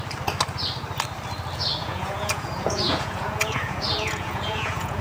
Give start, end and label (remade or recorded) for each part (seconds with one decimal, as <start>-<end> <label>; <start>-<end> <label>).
0.0-1.8 recorded; 1.8-5.0 remade